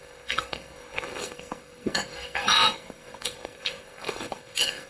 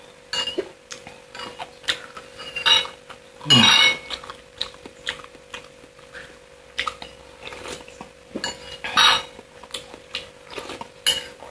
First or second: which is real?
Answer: second